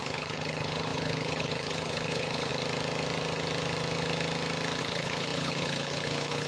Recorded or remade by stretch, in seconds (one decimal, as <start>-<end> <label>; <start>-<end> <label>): 0.0-2.5 remade; 2.5-4.8 recorded; 4.8-6.5 remade